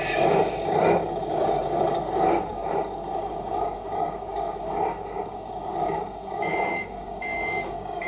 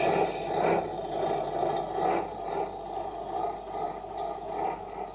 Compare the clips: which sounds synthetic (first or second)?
first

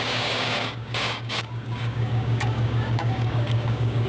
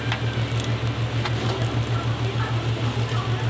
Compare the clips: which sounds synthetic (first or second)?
first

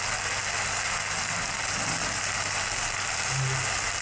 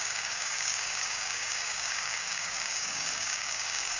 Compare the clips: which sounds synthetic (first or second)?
second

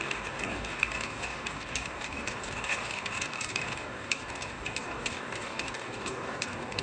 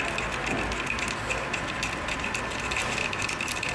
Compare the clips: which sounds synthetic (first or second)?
first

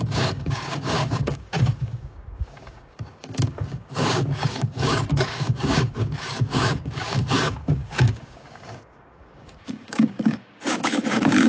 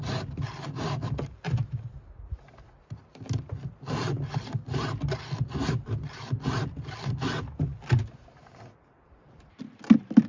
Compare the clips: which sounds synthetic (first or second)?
first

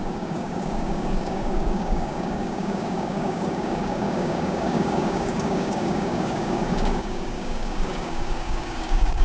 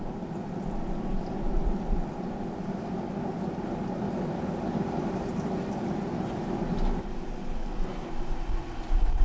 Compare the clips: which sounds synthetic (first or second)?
first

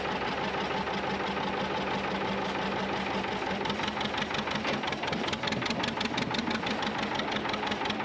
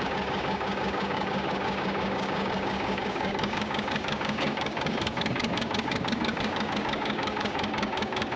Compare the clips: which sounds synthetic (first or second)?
second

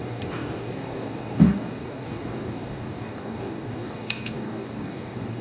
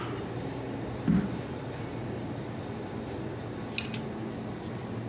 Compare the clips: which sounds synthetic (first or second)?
first